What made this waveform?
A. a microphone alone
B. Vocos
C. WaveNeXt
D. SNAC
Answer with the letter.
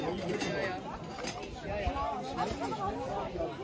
A